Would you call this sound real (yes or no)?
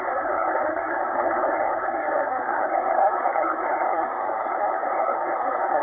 no